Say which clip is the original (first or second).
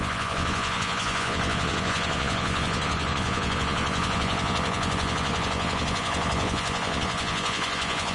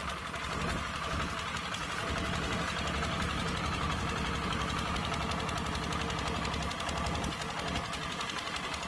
second